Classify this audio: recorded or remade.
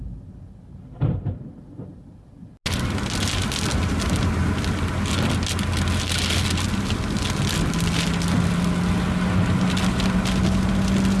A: recorded